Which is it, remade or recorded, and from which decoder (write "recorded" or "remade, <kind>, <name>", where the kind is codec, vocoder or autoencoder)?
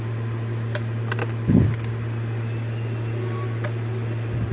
recorded